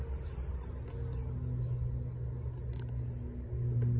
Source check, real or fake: real